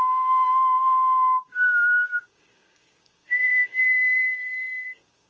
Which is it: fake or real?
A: fake